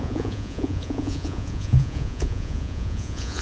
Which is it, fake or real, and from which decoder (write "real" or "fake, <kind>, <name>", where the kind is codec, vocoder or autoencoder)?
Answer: fake, vocoder, Vocos